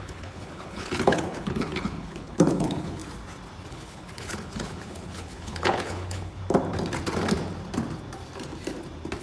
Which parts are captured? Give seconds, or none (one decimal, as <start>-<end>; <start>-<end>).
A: 3.0-3.7; 6.4-9.2